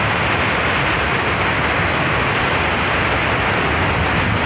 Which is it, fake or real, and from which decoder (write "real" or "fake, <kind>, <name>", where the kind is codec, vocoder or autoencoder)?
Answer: real